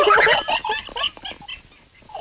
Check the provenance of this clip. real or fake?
real